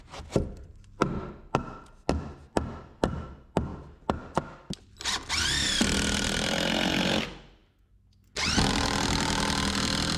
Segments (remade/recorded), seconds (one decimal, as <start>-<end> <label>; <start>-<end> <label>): 0.0-10.2 recorded